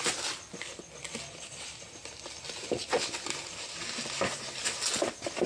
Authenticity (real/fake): real